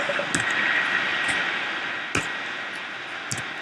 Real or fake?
real